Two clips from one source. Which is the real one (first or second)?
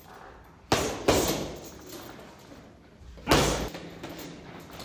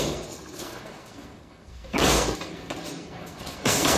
first